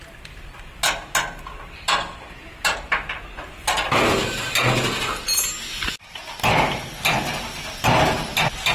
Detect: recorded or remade recorded